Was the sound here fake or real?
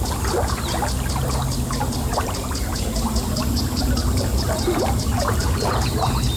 real